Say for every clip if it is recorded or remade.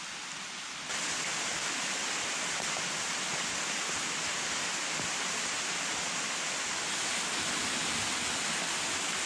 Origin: recorded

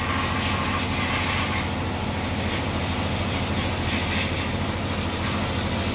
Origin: recorded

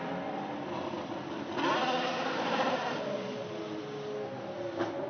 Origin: recorded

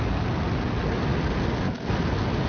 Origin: recorded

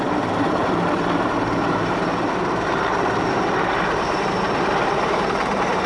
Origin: remade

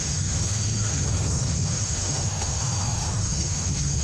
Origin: remade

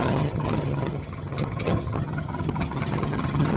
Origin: remade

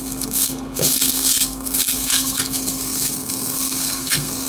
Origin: remade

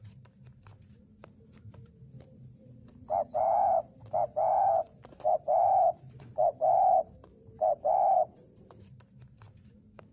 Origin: remade